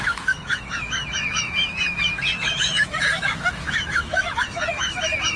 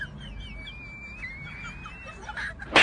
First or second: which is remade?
first